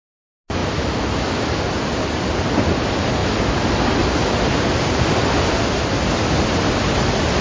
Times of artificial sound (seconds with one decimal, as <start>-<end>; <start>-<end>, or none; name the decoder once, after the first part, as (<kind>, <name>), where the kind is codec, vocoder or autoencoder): none